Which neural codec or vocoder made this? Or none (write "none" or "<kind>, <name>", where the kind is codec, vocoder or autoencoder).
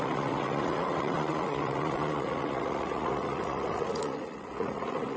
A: vocoder, Vocos